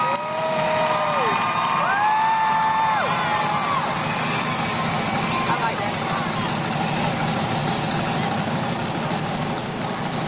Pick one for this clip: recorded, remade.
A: recorded